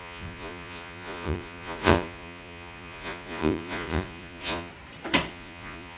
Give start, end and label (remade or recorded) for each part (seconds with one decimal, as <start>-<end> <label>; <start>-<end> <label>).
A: 0.0-4.7 remade; 4.7-5.3 recorded; 5.3-6.0 remade

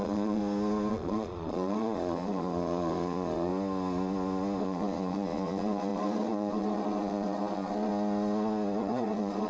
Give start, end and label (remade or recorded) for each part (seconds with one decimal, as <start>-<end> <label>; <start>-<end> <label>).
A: 0.0-0.4 remade; 0.4-0.9 recorded; 0.9-3.5 remade; 3.5-4.6 recorded; 4.6-7.9 remade; 7.9-8.8 recorded; 8.8-9.5 remade

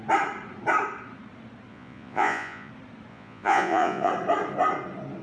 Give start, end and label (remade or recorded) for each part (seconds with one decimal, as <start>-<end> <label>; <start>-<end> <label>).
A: 0.0-1.7 recorded; 1.7-2.7 remade; 2.7-3.1 recorded; 3.1-4.1 remade; 4.1-5.2 recorded

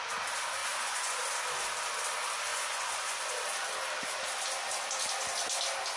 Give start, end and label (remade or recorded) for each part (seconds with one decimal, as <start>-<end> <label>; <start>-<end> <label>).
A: 0.0-0.6 recorded; 0.6-1.2 remade; 1.2-2.5 recorded; 2.5-3.3 remade; 3.3-6.0 recorded

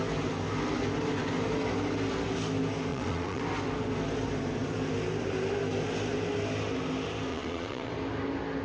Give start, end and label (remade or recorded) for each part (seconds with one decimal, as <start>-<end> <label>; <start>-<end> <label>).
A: 0.0-2.9 recorded; 2.9-3.4 remade; 3.4-7.3 recorded; 7.3-7.9 remade; 7.9-8.6 recorded

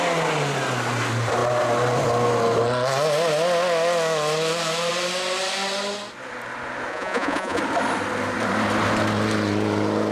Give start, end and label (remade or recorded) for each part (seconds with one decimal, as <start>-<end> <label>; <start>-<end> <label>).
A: 0.0-6.9 recorded; 6.9-7.6 remade; 7.6-10.1 recorded

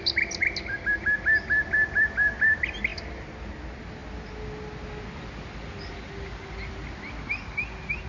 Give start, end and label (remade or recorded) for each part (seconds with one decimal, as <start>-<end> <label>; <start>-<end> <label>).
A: 0.0-8.1 recorded

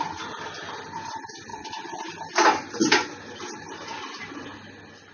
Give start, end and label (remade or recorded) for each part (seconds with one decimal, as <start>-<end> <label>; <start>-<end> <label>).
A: 0.0-1.5 recorded; 1.5-2.0 remade; 2.0-5.1 recorded